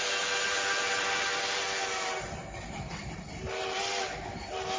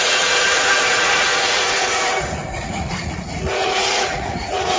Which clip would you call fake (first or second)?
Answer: second